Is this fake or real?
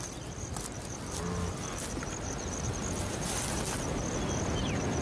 real